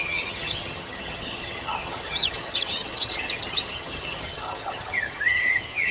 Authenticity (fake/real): fake